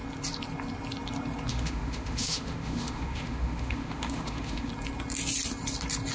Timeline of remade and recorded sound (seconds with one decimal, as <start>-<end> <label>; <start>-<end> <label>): 0.0-1.5 recorded; 1.5-4.7 remade; 4.7-6.1 recorded